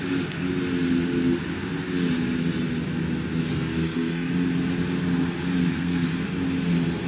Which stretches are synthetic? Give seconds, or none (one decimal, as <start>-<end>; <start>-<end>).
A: 3.5-4.3; 5.6-6.1